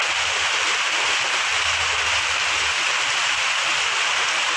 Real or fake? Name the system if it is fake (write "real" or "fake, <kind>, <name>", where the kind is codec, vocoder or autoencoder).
real